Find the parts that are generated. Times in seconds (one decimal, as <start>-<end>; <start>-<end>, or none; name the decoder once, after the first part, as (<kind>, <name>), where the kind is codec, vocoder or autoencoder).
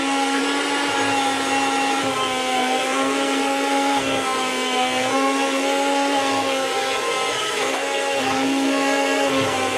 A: 0.0-0.4 (codec, SNAC); 2.0-9.8